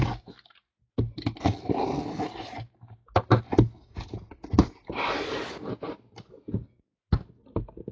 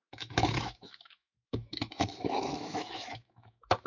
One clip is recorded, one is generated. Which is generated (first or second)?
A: second